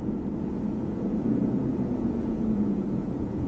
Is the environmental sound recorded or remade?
remade